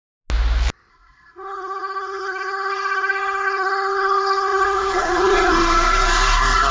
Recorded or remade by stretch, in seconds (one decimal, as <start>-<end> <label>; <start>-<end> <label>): 0.0-0.9 recorded; 0.9-6.7 remade